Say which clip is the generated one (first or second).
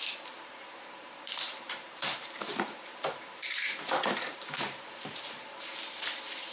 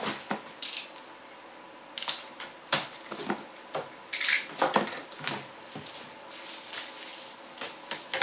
first